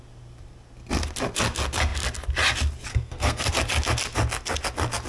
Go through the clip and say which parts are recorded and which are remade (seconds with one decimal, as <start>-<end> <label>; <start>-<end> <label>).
0.0-2.9 recorded; 2.9-3.5 remade; 3.5-5.1 recorded